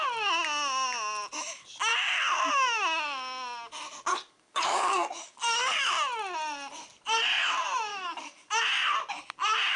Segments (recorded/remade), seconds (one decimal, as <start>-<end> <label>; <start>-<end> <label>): 0.0-4.1 recorded; 4.1-5.9 remade; 5.9-7.9 recorded; 7.9-8.5 remade; 8.5-9.8 recorded